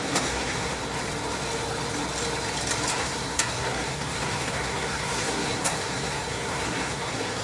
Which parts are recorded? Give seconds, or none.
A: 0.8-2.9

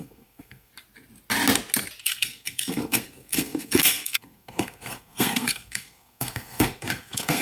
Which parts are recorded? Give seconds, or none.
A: 0.7-2.0

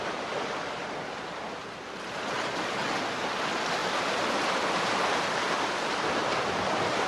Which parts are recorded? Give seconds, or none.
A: 0.0-7.1

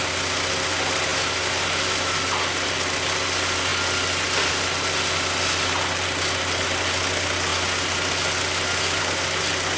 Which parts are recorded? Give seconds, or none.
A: 0.0-9.8